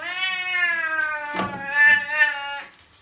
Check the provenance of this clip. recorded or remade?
recorded